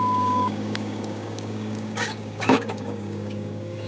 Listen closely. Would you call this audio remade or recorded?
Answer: remade